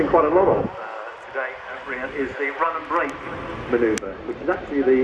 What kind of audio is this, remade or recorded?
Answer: recorded